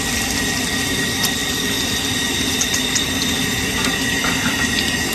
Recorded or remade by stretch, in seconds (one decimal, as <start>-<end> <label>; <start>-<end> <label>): 0.0-5.1 recorded